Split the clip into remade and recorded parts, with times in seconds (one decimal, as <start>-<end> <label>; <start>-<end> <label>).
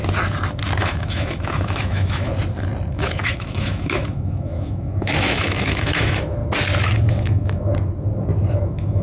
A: 0.0-0.8 recorded; 0.8-2.3 remade; 2.3-2.9 recorded; 2.9-6.4 remade; 6.4-7.1 recorded; 7.1-7.7 remade; 7.7-8.5 recorded; 8.5-9.0 remade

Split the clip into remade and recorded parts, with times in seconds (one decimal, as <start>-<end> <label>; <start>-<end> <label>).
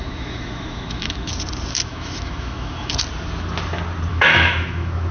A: 0.0-1.3 remade; 1.3-1.9 recorded; 1.9-2.9 remade; 2.9-4.1 recorded; 4.1-5.1 remade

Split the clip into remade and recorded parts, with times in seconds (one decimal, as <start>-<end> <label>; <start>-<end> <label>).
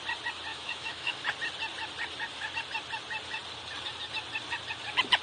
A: 0.0-0.5 recorded; 0.5-1.2 remade; 1.2-5.2 recorded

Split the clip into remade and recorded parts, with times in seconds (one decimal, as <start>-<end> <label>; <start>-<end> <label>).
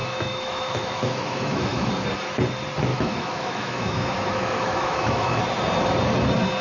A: 0.0-1.9 remade; 1.9-2.9 recorded; 2.9-5.4 remade; 5.4-6.6 recorded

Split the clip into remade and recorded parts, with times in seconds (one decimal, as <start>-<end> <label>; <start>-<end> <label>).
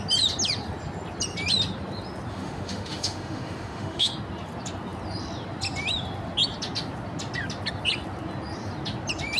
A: 0.0-2.3 recorded; 2.3-4.1 remade; 4.1-9.4 recorded